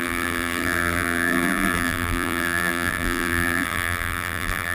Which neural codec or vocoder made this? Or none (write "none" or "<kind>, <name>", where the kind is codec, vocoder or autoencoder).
vocoder, BigVGAN v2